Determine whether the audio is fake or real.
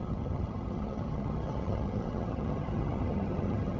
fake